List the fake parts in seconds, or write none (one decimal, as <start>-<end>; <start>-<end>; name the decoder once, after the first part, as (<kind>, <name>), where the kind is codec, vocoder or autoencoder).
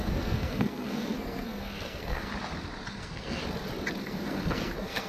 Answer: 0.0-2.3 (codec, SNAC); 2.9-3.4; 4.0-5.1